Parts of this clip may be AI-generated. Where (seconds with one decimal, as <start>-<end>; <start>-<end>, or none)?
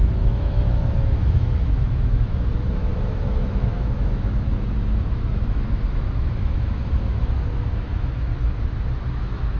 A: 0.0-8.3; 9.1-9.6